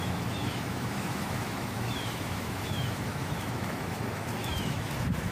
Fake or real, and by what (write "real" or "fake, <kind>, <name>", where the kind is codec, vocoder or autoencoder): fake, autoencoder, DAC-VAE